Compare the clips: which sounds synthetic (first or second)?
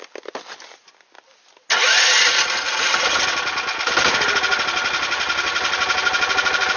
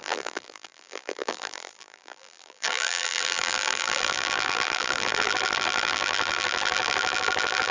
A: second